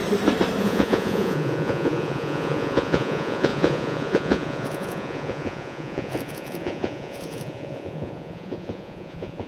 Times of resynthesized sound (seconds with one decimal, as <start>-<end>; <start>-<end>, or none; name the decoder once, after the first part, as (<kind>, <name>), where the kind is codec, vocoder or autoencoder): 0.6-9.5 (vocoder, Vocos)